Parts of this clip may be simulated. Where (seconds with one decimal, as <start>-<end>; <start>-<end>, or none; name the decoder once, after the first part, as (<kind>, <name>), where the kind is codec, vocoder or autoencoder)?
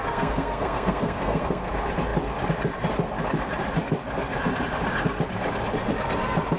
0.0-1.7 (codec, SNAC)